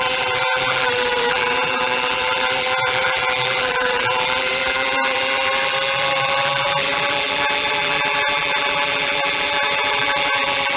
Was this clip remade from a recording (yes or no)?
yes